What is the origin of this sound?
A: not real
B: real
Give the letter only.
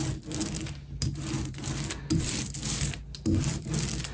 B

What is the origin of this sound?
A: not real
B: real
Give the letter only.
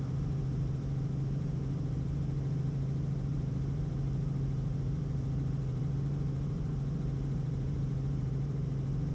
A